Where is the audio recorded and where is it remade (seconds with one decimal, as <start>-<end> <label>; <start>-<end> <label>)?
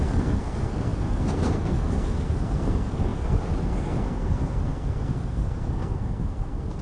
0.0-6.8 remade